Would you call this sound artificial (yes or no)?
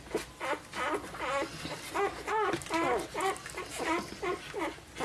no